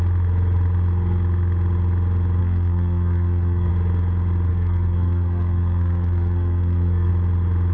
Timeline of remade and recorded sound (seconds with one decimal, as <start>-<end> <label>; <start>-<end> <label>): 0.0-2.4 recorded; 2.4-3.7 remade; 3.7-4.5 recorded; 4.5-7.1 remade; 7.1-7.7 recorded